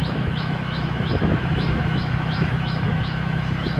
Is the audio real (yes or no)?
no